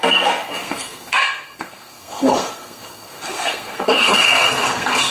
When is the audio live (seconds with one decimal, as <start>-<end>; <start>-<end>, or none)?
none